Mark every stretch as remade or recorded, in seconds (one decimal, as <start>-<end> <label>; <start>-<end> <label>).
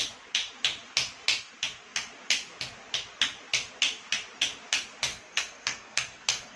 0.0-5.1 recorded; 5.1-6.6 remade